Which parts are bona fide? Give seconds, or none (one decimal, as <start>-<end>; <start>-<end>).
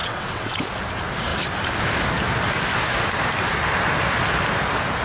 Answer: 0.6-5.0